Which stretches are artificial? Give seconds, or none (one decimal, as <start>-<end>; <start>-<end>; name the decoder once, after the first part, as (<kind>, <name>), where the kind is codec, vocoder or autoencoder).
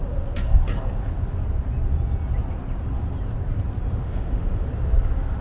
3.9-4.7 (autoencoder, DAC-VAE)